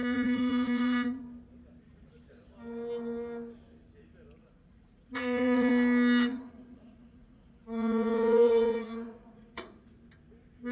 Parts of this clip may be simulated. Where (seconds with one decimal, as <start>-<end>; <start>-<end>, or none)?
0.0-1.2; 4.4-5.7; 6.3-9.9